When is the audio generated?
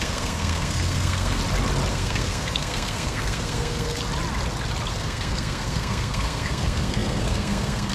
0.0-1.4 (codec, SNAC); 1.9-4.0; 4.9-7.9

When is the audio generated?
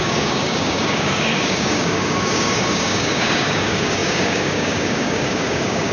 0.0-5.9 (codec, DAC)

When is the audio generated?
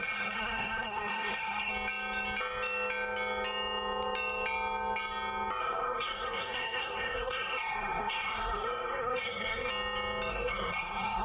0.0-1.7 (codec, SNAC); 5.6-9.7; 10.3-11.2